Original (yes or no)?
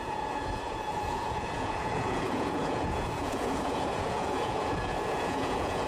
no